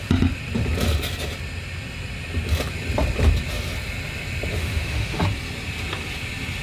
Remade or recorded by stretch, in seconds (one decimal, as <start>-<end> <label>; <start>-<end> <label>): 0.0-4.5 recorded; 4.5-5.2 remade; 5.2-6.6 recorded